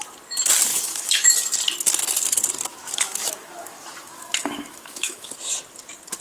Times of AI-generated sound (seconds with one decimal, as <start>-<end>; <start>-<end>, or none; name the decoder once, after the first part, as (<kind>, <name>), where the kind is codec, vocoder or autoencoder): 0.7-1.3 (autoencoder, DAC-VAE); 2.7-5.3